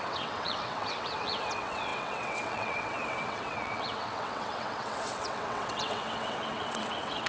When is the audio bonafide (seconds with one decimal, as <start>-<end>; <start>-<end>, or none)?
none

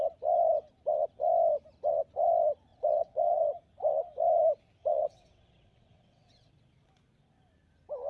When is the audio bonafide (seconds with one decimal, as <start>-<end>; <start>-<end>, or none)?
0.0-2.7; 3.4-4.8; 6.5-8.1

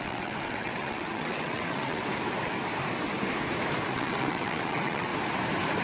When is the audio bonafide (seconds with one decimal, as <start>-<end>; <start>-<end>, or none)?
2.0-3.9; 5.1-5.8

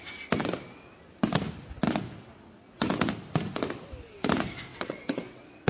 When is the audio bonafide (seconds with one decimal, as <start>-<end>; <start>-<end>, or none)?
0.0-4.7